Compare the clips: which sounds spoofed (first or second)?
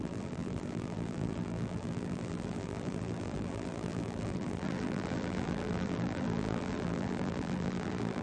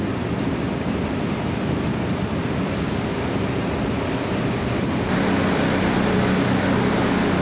first